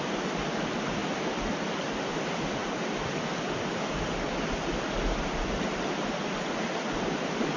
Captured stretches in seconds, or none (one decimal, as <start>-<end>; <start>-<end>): 0.0-7.6